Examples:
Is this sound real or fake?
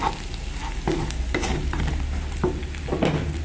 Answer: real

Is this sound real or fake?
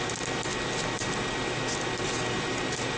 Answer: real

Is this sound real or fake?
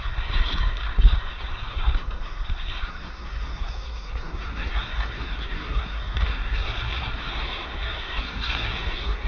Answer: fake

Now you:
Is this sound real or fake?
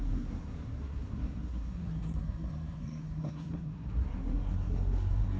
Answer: fake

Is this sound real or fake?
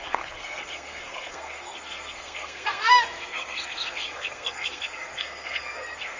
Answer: fake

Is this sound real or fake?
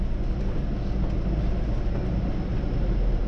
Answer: real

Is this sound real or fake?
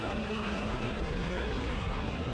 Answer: fake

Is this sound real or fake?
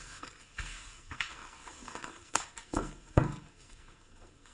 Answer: fake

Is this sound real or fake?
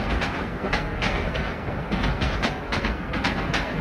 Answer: fake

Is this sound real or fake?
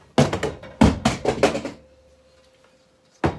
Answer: real